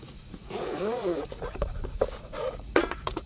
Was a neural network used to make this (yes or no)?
yes